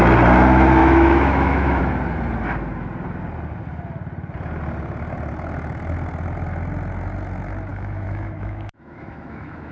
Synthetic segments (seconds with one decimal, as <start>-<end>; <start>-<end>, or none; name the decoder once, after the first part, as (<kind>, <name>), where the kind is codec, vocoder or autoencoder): 0.8-1.8 (autoencoder, DAC-VAE); 7.7-9.7